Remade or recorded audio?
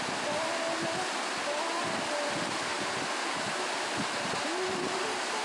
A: remade